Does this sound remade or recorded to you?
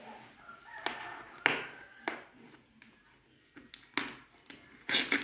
recorded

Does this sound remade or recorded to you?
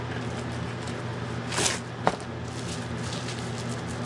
recorded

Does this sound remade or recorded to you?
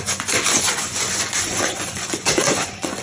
remade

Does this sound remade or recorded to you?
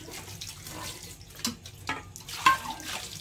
recorded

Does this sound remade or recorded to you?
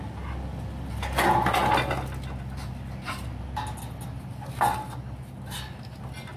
recorded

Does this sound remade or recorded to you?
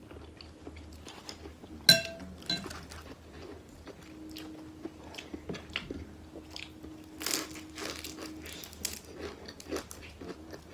recorded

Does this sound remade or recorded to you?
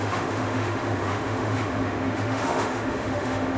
remade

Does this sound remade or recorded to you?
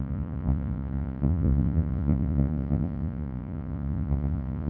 remade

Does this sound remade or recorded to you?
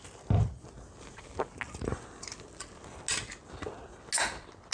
recorded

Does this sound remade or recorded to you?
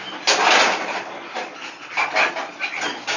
recorded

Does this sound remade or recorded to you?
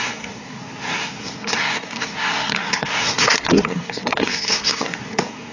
remade